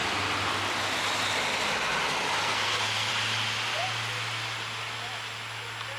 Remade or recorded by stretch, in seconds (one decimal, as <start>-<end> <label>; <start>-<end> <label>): 0.0-2.4 recorded; 2.4-3.1 remade; 3.1-6.0 recorded